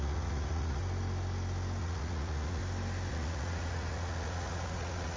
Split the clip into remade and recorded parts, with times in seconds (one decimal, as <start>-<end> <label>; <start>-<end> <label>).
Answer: 0.0-0.8 remade; 0.8-1.8 recorded; 1.8-2.6 remade; 2.6-3.1 recorded; 3.1-5.2 remade